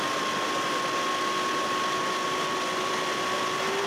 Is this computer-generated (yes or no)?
no